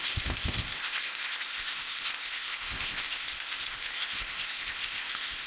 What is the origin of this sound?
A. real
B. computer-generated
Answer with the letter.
B